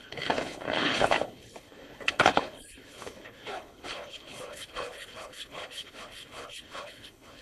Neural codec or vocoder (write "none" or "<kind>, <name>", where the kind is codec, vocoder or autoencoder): codec, HILCodec